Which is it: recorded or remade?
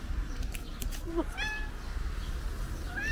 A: recorded